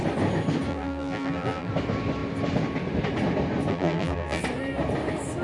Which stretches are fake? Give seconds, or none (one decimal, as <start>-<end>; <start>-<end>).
0.7-1.7; 3.7-4.4